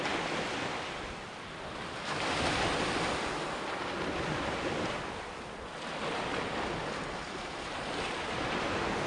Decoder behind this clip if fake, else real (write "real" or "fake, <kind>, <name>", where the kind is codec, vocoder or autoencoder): real